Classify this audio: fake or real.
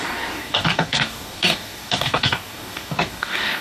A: fake